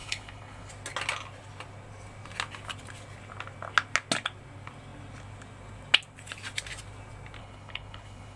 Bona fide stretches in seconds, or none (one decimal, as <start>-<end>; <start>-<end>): 0.7-7.4